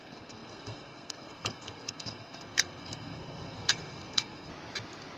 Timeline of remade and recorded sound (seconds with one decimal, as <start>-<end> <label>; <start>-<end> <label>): 0.0-4.5 remade; 4.5-5.2 recorded